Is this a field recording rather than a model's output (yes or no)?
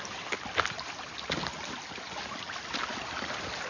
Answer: yes